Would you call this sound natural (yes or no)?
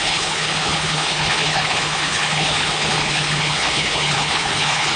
no